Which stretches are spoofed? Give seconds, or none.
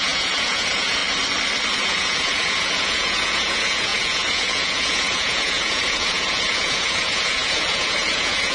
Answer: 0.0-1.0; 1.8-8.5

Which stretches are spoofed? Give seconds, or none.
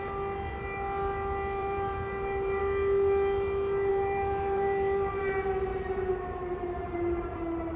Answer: 1.6-2.6; 3.9-5.2; 5.7-7.8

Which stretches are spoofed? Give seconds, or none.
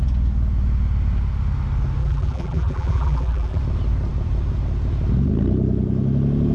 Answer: 2.0-3.6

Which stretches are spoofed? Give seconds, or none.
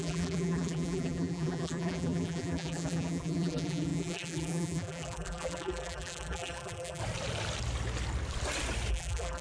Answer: 0.0-7.0; 8.9-9.4